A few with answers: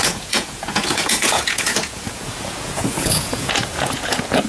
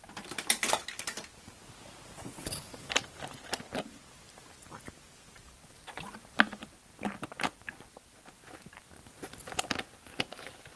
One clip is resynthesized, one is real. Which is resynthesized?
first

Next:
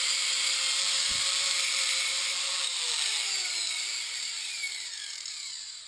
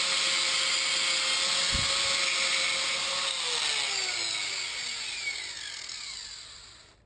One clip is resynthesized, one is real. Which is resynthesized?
first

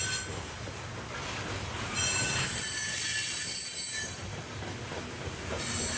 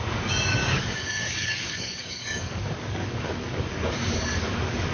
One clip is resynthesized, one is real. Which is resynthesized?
second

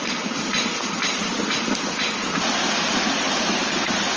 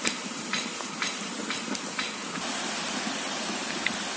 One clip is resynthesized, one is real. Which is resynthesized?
second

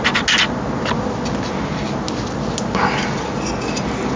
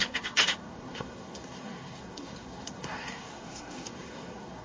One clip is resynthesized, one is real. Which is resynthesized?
second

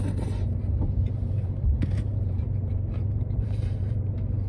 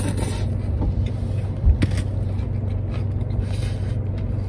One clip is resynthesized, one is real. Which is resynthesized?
first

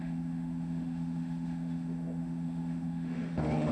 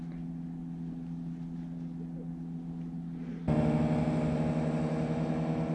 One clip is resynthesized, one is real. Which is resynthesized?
first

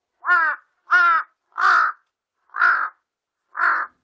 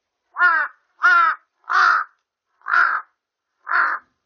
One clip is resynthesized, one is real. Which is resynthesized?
second